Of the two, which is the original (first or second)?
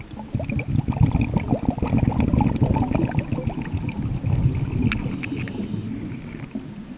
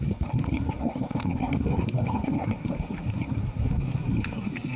first